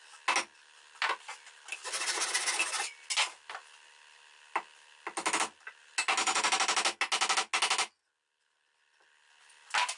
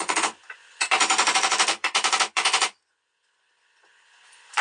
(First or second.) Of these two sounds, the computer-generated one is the second